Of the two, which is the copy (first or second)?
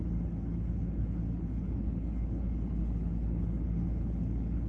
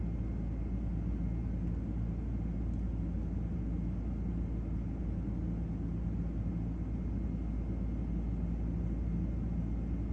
first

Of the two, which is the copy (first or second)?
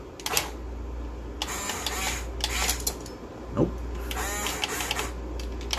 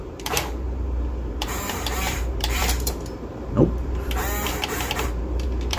second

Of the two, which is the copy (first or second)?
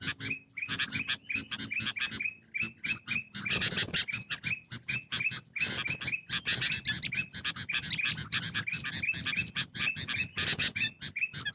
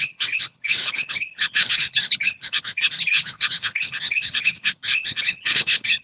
second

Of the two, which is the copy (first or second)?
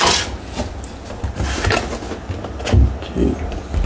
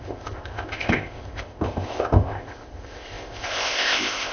second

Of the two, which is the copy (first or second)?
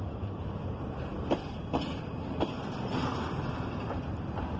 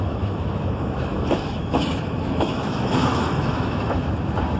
second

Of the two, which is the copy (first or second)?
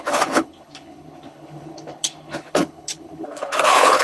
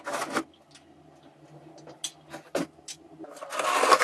first